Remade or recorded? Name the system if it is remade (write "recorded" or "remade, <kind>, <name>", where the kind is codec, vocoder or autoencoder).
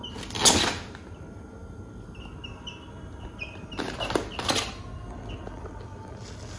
recorded